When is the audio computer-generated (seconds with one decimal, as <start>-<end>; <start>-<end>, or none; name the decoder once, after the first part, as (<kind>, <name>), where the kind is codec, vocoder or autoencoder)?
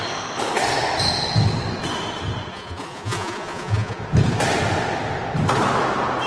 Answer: 2.5-4.0 (vocoder, Vocos)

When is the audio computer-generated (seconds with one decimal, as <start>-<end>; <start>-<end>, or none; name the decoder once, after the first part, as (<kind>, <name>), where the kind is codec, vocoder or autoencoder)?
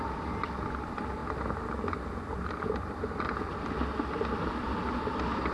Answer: none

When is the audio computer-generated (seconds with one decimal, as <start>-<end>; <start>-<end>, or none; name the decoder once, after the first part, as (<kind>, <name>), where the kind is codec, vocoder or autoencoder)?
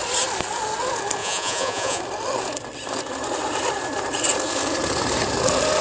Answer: 1.2-2.0 (vocoder, Vocos)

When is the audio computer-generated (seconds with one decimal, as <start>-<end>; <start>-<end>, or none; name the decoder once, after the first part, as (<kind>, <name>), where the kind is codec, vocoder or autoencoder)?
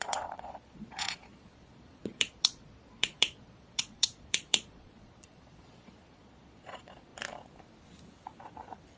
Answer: 0.0-7.1 (vocoder, Vocos)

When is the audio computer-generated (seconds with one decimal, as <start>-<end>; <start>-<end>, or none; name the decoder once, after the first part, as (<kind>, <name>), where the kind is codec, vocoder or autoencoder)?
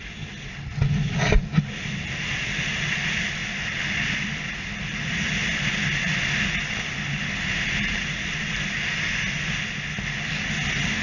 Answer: none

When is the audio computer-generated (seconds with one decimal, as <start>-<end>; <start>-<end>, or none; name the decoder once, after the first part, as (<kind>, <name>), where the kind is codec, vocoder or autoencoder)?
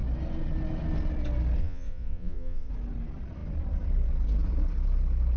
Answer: 1.6-2.7 (vocoder, Vocos)